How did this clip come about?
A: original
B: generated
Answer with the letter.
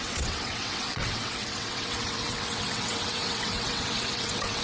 B